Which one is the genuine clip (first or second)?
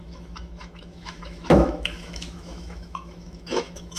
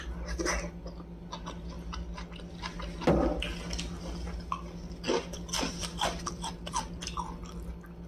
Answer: second